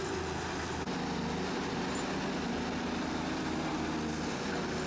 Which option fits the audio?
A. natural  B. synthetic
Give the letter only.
A